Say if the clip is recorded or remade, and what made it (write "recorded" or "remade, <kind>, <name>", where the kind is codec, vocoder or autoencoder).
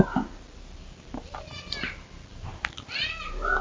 recorded